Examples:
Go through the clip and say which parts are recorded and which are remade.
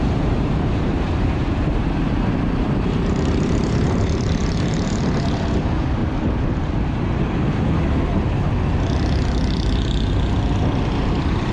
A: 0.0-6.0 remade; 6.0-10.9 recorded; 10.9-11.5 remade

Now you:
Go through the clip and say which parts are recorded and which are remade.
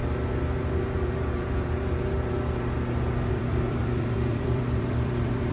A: 0.0-3.3 recorded; 3.3-5.5 remade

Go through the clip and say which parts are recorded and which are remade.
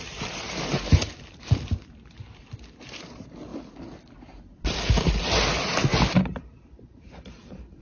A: 0.0-3.5 remade; 3.5-4.7 recorded; 4.7-7.8 remade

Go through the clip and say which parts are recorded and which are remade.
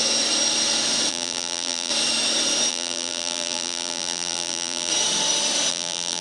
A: 0.0-1.1 recorded; 1.1-1.9 remade; 1.9-2.7 recorded; 2.7-4.9 remade; 4.9-5.7 recorded; 5.7-6.2 remade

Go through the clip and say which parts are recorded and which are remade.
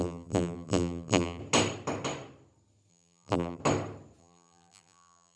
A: 0.0-1.4 remade; 1.4-2.9 recorded; 2.9-3.6 remade; 3.6-4.2 recorded; 4.2-5.4 remade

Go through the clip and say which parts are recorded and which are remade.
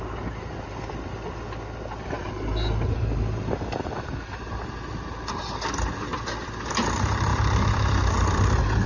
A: 0.0-8.9 remade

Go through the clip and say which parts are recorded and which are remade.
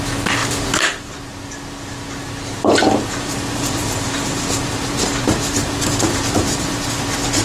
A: 0.0-0.4 recorded; 0.4-1.1 remade; 1.1-3.3 recorded; 3.3-6.9 remade; 6.9-7.4 recorded